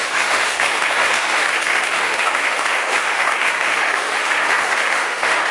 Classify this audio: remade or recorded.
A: remade